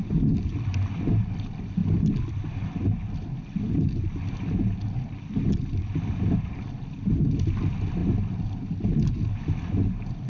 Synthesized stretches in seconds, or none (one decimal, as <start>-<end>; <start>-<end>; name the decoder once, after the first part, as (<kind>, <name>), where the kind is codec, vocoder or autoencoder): none